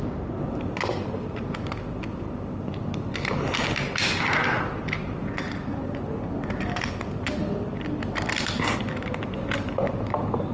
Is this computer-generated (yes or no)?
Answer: no